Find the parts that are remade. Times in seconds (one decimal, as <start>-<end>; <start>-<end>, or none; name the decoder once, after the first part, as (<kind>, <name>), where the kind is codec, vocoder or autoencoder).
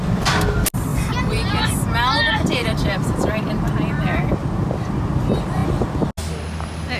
0.9-1.4 (vocoder, BigVGAN v2); 2.6-3.5